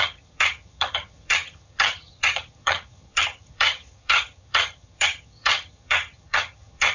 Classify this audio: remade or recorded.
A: remade